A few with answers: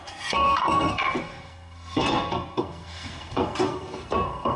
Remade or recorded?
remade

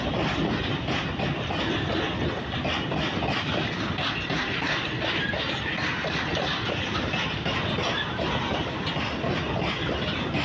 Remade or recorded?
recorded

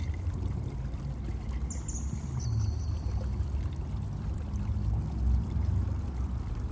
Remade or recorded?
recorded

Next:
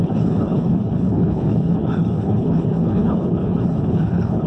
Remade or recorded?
remade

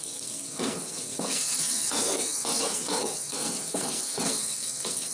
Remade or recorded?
remade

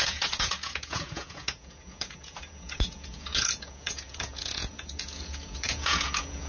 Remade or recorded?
remade